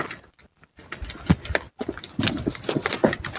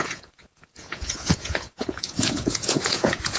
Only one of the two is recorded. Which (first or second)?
first